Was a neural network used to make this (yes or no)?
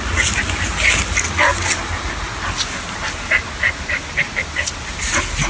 no